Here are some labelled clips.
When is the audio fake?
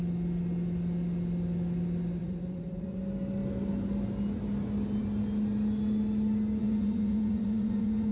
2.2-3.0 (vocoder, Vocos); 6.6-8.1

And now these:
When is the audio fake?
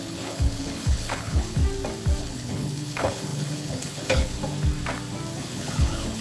0.0-1.6 (codec, HILCodec); 2.2-4.4; 5.4-6.2